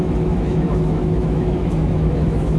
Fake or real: fake